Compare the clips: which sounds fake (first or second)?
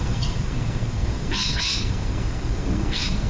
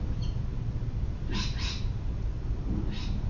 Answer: first